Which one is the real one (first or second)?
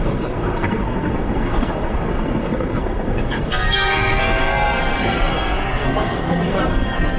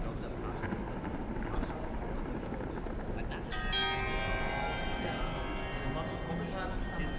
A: second